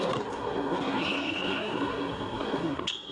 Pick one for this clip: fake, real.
fake